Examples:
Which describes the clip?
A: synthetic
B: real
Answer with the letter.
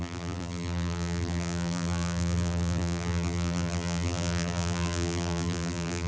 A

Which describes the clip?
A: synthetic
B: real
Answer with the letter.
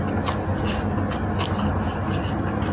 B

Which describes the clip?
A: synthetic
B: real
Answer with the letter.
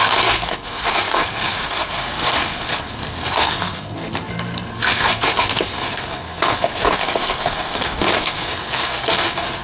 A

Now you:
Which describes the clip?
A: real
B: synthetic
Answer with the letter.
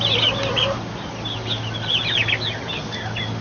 A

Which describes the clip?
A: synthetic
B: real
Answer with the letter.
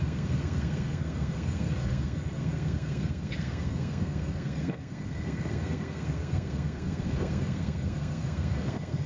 A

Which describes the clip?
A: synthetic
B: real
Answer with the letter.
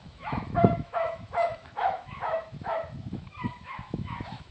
A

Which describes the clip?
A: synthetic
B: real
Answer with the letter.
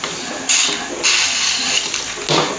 B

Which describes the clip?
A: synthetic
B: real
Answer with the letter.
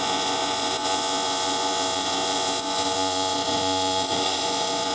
A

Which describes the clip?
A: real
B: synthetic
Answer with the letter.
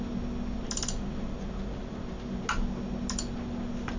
A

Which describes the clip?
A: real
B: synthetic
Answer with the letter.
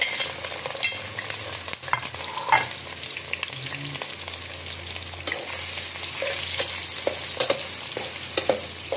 A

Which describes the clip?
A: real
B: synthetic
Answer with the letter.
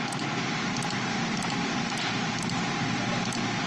A